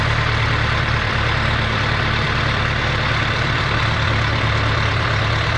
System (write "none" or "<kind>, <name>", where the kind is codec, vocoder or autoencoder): vocoder, BigVGAN v2